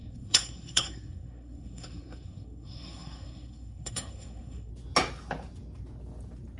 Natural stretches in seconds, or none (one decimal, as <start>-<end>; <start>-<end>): 4.7-6.6